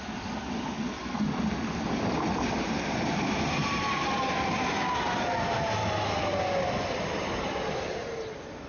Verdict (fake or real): real